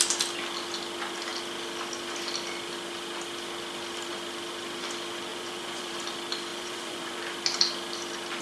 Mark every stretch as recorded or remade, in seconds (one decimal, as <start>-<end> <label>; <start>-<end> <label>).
0.0-5.3 recorded; 5.3-5.9 remade; 5.9-6.5 recorded; 6.5-7.2 remade; 7.2-8.4 recorded

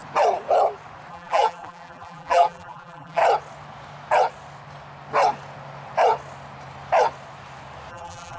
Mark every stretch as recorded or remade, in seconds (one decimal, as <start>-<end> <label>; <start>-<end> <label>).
0.0-1.1 recorded; 1.1-3.2 remade; 3.2-7.9 recorded; 7.9-8.4 remade

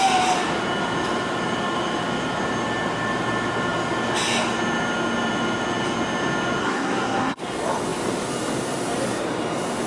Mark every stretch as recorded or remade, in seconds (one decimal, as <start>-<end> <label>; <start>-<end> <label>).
0.0-6.6 recorded; 6.6-7.4 remade; 7.4-9.9 recorded